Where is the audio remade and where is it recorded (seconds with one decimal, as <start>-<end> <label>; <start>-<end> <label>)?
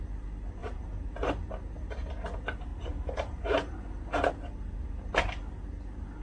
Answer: 0.0-0.6 recorded; 0.6-1.1 remade; 1.1-2.7 recorded; 2.7-3.8 remade; 3.8-6.2 recorded